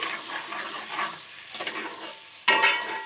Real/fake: real